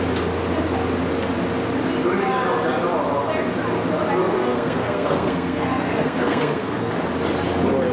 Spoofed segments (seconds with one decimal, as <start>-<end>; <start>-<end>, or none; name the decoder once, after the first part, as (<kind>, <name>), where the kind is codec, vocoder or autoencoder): 4.2-6.9 (codec, SNAC)